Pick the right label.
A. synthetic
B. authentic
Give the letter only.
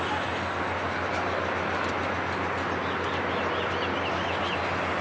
B